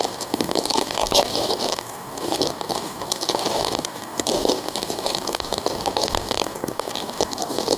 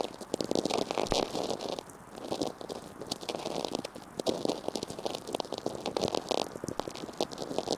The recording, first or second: second